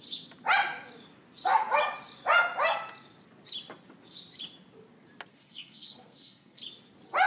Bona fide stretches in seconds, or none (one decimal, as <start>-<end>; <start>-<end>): 0.0-5.3; 6.6-7.3